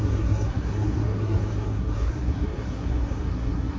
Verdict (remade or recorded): remade